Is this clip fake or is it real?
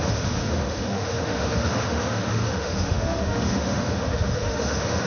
fake